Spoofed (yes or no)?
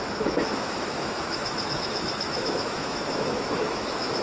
yes